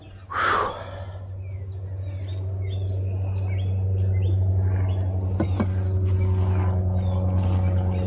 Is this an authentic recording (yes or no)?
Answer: yes